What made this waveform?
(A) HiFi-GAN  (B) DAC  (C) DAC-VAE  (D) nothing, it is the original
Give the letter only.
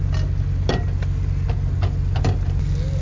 D